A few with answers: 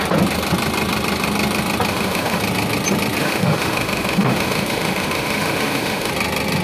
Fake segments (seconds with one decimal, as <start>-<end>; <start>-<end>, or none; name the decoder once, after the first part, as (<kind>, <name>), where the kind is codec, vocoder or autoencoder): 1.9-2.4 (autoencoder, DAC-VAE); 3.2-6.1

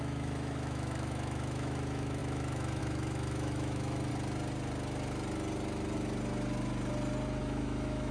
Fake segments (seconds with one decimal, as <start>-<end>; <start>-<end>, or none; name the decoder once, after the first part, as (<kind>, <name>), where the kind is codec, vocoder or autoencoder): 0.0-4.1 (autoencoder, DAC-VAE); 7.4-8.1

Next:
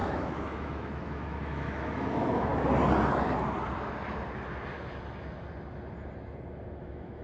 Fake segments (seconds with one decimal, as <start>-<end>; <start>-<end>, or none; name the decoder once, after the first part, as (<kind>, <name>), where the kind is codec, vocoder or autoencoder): 0.0-2.5 (autoencoder, DAC-VAE); 6.8-7.2